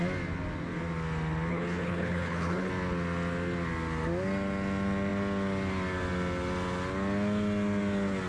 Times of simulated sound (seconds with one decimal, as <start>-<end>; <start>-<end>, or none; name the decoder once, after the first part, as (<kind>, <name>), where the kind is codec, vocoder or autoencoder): 1.5-2.7 (codec, HILCodec)